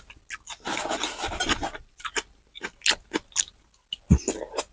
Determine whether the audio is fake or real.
real